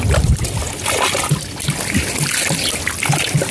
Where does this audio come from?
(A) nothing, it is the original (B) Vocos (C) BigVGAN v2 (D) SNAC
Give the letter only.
A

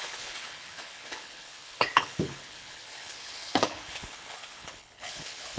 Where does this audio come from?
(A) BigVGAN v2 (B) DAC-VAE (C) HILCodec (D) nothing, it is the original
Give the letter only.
C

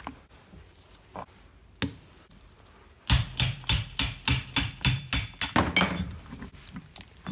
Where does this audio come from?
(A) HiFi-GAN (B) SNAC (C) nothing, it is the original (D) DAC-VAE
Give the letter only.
C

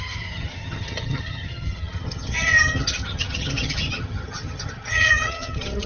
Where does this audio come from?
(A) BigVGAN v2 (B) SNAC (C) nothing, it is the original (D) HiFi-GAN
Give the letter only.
D